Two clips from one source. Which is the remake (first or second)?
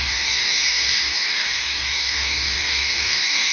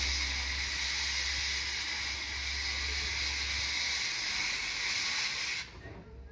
first